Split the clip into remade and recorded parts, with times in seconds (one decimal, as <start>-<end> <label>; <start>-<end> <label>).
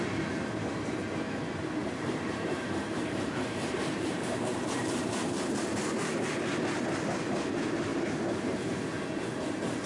0.0-1.8 recorded; 1.8-6.5 remade; 6.5-7.9 recorded; 7.9-8.8 remade; 8.8-9.9 recorded